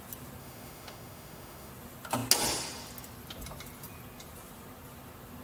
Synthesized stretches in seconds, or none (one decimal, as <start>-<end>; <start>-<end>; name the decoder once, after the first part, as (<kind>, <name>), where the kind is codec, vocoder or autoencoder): 0.4-1.7 (autoencoder, DAC-VAE)